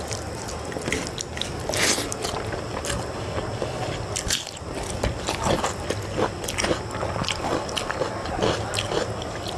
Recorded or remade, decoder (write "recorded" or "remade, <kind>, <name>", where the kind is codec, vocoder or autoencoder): recorded